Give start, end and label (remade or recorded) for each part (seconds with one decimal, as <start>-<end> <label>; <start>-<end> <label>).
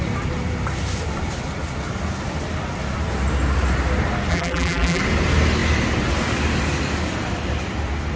0.0-4.3 recorded; 4.3-5.0 remade; 5.0-8.2 recorded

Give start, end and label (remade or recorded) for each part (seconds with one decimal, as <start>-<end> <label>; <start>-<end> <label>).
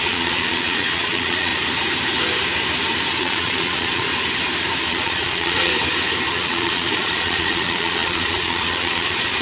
0.0-1.5 remade; 1.5-3.2 recorded; 3.2-4.1 remade; 4.1-4.9 recorded; 4.9-5.7 remade; 5.7-6.3 recorded; 6.3-9.4 remade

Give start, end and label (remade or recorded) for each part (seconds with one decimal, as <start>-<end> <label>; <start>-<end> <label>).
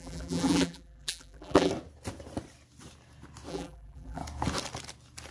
0.0-1.7 remade; 1.7-3.5 recorded; 3.5-4.2 remade; 4.2-5.3 recorded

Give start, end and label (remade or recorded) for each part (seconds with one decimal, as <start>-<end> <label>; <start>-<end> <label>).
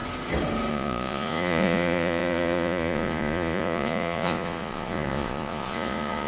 0.0-0.7 recorded; 0.7-6.3 remade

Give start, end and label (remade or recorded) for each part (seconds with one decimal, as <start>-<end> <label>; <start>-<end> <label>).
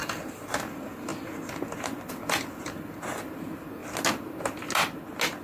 0.0-5.4 recorded